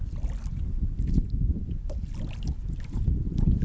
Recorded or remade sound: recorded